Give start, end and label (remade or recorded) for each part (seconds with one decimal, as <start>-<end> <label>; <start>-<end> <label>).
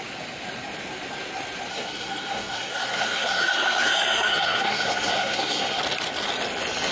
0.0-1.7 recorded; 1.7-5.8 remade; 5.8-6.9 recorded